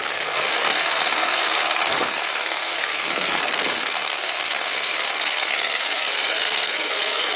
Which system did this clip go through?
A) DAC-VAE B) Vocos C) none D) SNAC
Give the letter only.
D